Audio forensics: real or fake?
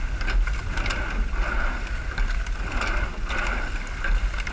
real